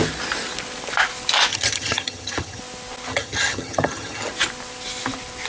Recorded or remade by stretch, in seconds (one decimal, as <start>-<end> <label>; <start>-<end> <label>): 0.0-1.5 recorded; 1.5-2.6 remade; 2.6-3.1 recorded; 3.1-4.3 remade; 4.3-5.5 recorded